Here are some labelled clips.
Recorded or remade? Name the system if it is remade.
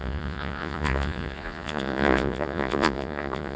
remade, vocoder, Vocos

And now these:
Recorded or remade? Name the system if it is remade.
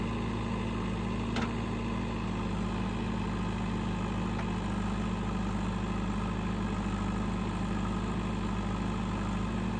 recorded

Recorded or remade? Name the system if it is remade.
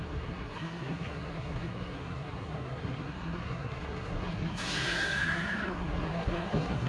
remade, codec, SNAC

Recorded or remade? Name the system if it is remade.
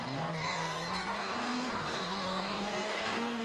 remade, codec, DAC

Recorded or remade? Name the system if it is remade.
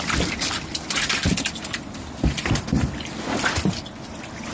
recorded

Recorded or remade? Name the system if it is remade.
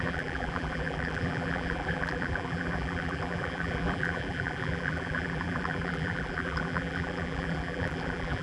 remade, vocoder, BigVGAN v2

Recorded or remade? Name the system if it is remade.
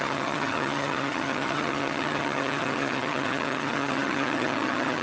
remade, vocoder, HiFi-GAN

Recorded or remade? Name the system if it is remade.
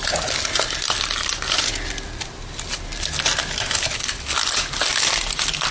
recorded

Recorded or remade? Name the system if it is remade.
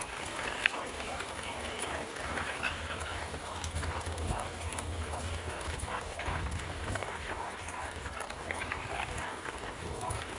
remade, codec, DAC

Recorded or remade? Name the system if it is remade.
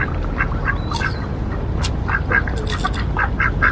recorded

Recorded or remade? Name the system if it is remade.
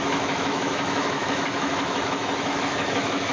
remade, autoencoder, DAC-VAE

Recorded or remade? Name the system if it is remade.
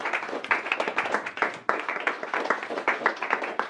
remade, vocoder, Vocos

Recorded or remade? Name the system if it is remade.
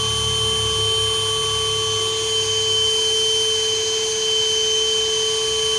recorded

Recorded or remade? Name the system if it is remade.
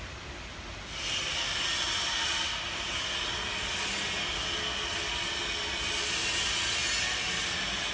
recorded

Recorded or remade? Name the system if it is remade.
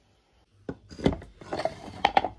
recorded